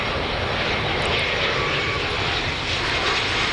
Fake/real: real